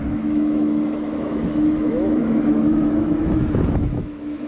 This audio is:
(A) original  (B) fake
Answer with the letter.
B